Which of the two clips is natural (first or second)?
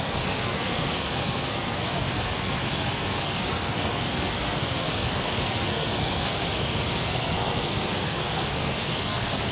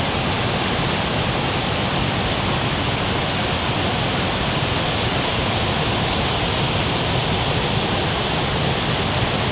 second